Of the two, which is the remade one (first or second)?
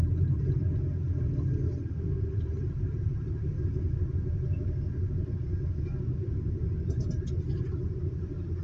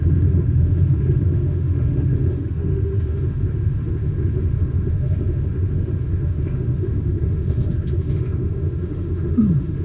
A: second